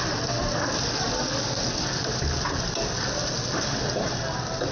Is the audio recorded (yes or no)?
yes